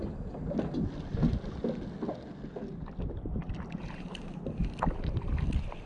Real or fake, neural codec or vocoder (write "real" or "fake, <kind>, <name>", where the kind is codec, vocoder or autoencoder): real